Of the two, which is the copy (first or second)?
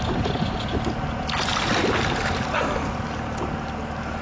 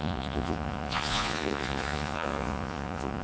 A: second